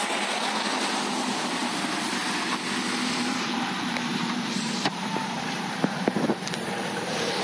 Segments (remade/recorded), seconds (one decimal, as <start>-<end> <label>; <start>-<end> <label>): 0.0-3.0 recorded; 3.0-7.4 remade